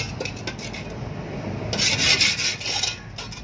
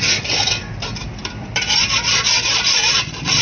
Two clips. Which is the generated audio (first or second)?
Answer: second